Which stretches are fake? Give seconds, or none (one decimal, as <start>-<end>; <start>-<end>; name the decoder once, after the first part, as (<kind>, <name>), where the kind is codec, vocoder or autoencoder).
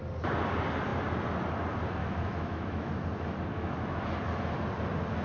2.0-2.9 (autoencoder, DAC-VAE); 3.5-4.0